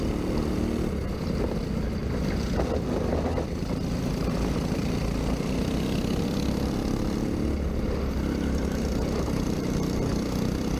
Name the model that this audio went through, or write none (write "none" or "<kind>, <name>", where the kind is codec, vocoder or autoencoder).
none